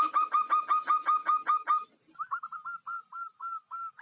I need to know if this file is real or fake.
real